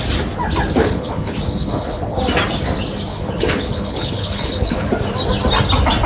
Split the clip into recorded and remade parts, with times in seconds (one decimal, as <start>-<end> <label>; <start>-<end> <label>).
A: 0.0-0.8 recorded; 0.8-2.2 remade; 2.2-3.1 recorded; 3.1-4.9 remade; 4.9-6.1 recorded